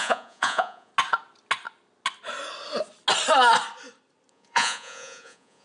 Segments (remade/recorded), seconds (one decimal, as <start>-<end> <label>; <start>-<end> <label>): 0.0-0.9 remade; 0.9-4.3 recorded; 4.3-5.6 remade